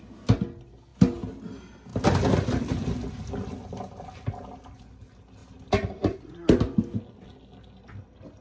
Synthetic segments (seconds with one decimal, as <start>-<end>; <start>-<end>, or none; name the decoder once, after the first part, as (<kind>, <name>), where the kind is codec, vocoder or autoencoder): none